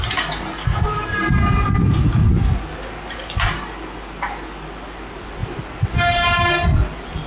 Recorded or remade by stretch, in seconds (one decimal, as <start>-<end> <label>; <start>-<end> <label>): 0.0-7.3 recorded